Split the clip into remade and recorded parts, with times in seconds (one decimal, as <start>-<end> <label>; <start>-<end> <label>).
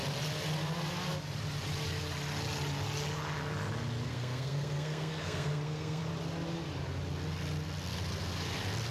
0.0-4.1 recorded; 4.1-6.0 remade; 6.0-8.9 recorded